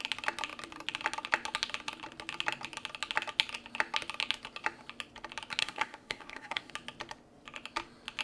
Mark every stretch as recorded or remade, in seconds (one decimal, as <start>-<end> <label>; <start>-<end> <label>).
0.0-5.6 recorded; 5.6-6.7 remade; 6.7-8.2 recorded